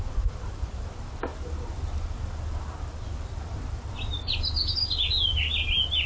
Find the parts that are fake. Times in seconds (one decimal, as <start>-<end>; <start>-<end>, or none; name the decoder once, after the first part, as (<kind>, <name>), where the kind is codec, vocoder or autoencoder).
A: none